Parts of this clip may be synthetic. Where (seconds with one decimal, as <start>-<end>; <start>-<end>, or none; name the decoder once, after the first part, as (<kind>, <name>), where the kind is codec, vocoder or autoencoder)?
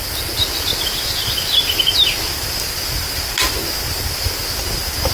none